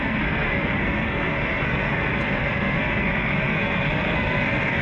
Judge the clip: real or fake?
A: fake